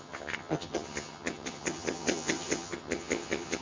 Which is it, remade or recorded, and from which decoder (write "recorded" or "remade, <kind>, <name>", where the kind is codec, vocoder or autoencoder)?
remade, vocoder, HiFi-GAN